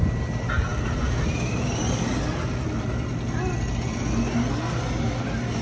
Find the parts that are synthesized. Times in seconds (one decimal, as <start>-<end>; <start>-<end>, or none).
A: none